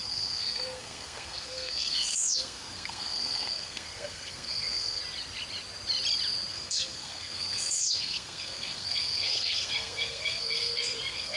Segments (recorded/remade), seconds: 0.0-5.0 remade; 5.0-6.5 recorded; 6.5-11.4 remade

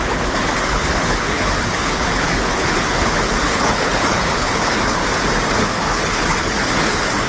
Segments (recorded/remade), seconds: 0.0-5.0 remade; 5.0-5.5 recorded; 5.5-7.3 remade

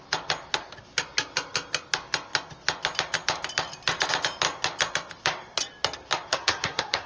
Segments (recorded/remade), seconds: 0.0-6.3 recorded; 6.3-7.1 remade

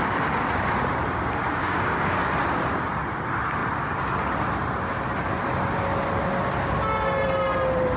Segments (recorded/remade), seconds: 0.0-1.6 recorded; 1.6-2.3 remade; 2.3-8.0 recorded